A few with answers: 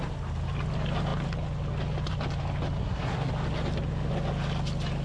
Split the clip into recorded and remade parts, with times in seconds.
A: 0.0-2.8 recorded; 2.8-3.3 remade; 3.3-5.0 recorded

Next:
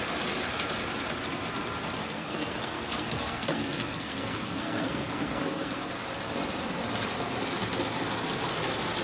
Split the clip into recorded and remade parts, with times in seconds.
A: 0.0-2.0 recorded; 2.0-5.9 remade; 5.9-9.0 recorded

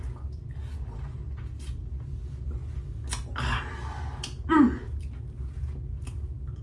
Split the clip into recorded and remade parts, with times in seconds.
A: 0.0-6.6 recorded

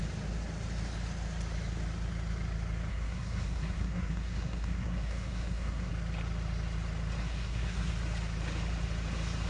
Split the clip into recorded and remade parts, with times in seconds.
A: 0.0-2.9 recorded; 2.9-5.9 remade; 5.9-7.2 recorded; 7.2-7.9 remade; 7.9-9.5 recorded

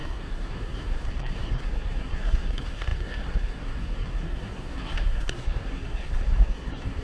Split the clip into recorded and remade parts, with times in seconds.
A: 0.0-7.0 remade

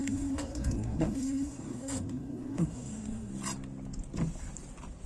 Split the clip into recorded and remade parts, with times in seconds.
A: 0.0-3.3 remade; 3.3-5.1 recorded